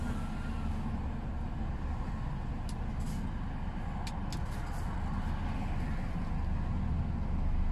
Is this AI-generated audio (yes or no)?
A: no